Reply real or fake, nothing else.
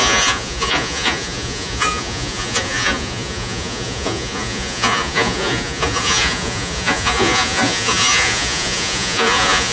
fake